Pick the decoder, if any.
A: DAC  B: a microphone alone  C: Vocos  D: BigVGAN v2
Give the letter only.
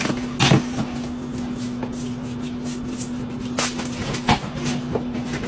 B